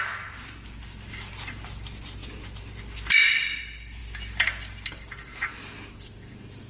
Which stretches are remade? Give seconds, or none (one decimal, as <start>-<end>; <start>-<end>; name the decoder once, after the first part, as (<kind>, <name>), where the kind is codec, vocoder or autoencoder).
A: none